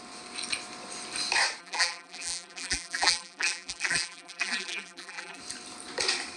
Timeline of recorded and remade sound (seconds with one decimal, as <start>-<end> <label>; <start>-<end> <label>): 0.0-1.6 recorded; 1.6-5.4 remade; 5.4-6.4 recorded